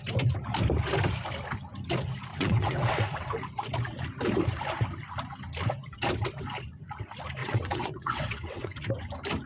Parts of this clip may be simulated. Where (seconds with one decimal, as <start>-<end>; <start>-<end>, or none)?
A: 2.3-3.3; 7.4-8.9